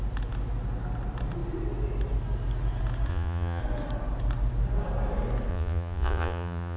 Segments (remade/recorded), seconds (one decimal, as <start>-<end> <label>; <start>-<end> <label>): 0.0-3.1 recorded; 3.1-3.6 remade; 3.6-5.5 recorded; 5.5-6.8 remade